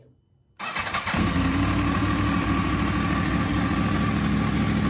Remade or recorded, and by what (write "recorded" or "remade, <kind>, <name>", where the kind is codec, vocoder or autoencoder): recorded